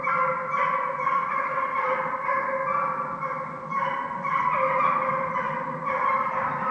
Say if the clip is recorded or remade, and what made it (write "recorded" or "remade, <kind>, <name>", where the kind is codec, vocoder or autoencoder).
recorded